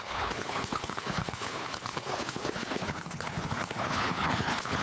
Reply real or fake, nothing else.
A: fake